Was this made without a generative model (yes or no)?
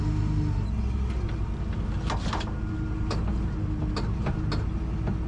yes